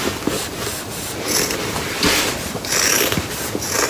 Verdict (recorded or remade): recorded